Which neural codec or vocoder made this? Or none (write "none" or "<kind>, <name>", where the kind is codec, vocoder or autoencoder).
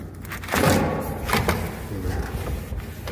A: none